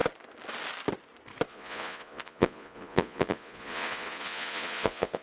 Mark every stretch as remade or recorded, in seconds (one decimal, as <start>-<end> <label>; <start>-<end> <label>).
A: 0.0-1.5 recorded; 1.5-5.2 remade